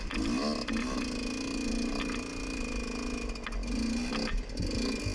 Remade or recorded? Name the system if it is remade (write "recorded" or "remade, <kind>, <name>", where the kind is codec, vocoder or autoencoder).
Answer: recorded